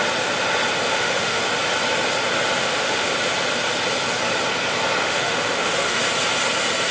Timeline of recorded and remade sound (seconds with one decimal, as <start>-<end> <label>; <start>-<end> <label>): 0.0-0.9 recorded; 0.9-1.4 remade; 1.4-2.6 recorded; 2.6-3.1 remade; 3.1-5.0 recorded; 5.0-6.0 remade; 6.0-6.9 recorded